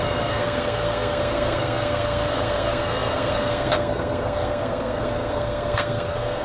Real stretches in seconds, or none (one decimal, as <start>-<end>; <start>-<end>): none